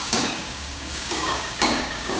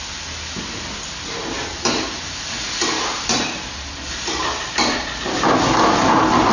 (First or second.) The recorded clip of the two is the second